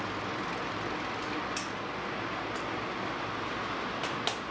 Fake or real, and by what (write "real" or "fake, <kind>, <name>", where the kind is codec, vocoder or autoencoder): real